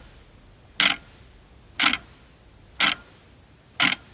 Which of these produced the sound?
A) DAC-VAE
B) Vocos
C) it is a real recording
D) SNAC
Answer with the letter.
C